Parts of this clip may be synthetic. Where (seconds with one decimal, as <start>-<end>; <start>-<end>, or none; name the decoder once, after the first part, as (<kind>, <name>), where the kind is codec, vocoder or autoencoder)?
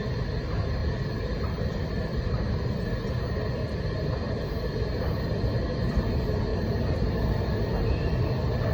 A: 0.8-3.1 (vocoder, BigVGAN v2); 6.5-7.1